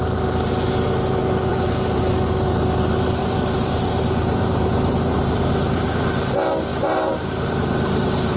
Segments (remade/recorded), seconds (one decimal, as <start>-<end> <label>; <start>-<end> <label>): 0.0-1.5 recorded; 1.5-2.0 remade; 2.0-3.2 recorded; 3.2-6.3 remade; 6.3-6.7 recorded; 6.7-7.5 remade; 7.5-8.4 recorded